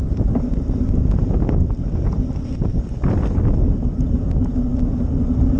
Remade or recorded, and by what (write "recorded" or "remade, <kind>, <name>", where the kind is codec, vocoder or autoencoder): recorded